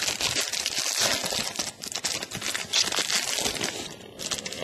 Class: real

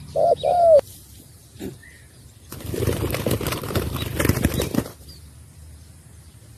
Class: real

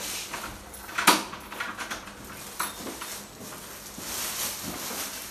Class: real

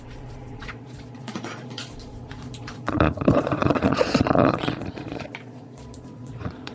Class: fake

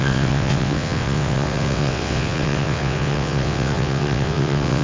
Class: fake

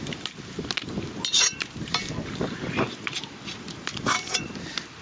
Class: real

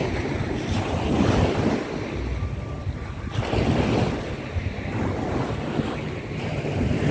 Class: real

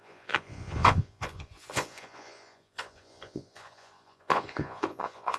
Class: fake